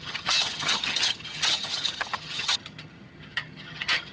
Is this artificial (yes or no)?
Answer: yes